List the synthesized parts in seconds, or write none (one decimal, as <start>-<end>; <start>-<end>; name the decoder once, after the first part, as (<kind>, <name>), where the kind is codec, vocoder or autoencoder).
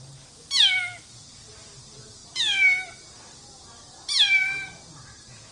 none